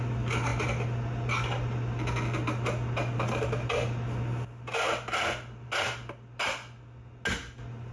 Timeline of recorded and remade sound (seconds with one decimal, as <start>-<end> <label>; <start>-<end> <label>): 0.0-7.9 recorded